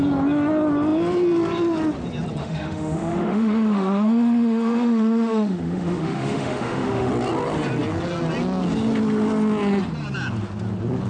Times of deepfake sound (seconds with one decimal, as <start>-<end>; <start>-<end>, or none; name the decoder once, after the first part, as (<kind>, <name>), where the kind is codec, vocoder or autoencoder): 2.4-7.1 (autoencoder, DAC-VAE)